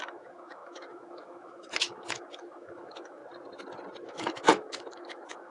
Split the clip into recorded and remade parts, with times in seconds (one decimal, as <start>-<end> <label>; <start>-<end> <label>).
0.0-3.2 remade; 3.2-4.1 recorded; 4.1-5.5 remade